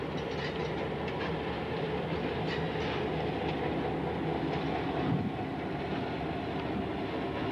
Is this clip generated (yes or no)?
no